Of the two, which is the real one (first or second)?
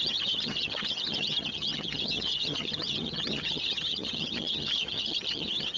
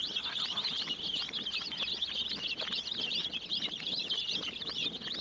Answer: second